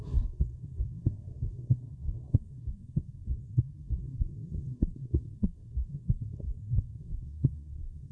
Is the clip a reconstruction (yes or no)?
yes